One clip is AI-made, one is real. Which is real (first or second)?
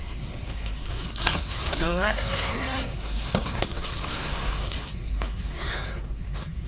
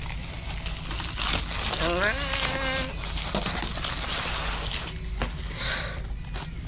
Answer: second